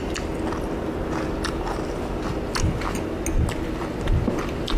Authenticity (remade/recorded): recorded